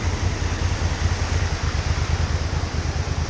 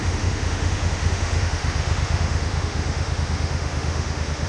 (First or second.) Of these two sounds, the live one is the first